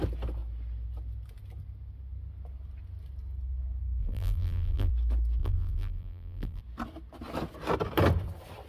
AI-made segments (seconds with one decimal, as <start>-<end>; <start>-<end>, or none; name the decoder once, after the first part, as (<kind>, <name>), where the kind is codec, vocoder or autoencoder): 4.0-4.9 (vocoder, BigVGAN v2); 5.4-6.6